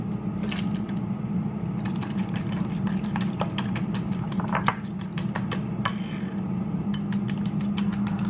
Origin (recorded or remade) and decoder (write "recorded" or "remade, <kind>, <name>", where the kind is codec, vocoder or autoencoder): recorded